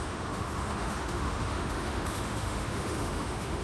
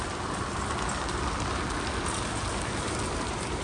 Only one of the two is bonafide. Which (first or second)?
second